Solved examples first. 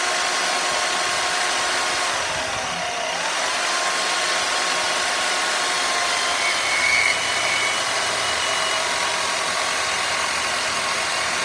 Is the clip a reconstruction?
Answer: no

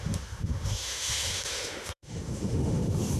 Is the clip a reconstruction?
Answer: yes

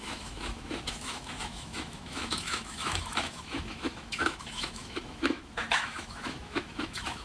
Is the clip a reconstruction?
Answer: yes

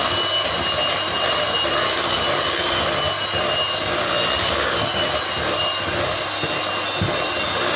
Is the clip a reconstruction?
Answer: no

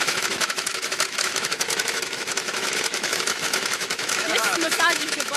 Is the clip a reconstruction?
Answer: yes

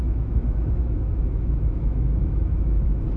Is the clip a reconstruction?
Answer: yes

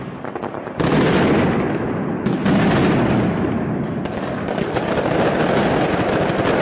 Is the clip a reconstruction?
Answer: no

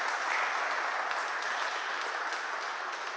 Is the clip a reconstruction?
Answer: no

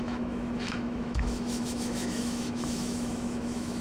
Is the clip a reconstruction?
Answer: yes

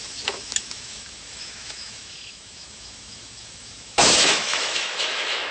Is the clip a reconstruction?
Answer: yes